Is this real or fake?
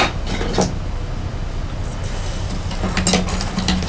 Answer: real